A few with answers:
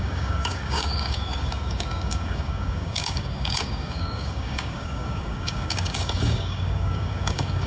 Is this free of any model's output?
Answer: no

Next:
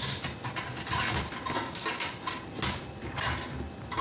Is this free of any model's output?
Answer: yes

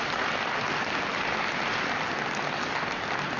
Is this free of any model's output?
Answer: yes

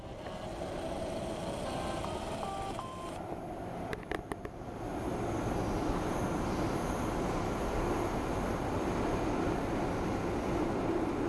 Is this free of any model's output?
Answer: yes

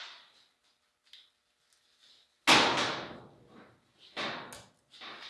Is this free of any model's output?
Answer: yes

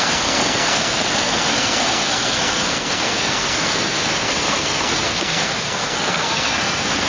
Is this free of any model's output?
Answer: no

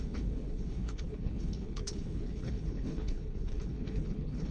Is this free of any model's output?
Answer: no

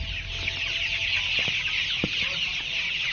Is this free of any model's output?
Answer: yes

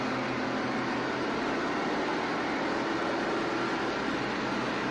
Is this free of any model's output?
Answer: yes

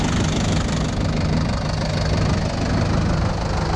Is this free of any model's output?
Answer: yes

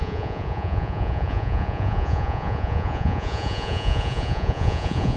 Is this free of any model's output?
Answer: no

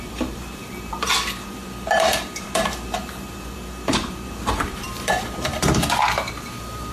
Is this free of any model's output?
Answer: no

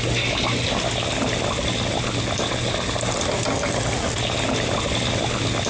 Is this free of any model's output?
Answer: yes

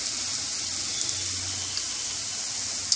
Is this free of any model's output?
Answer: yes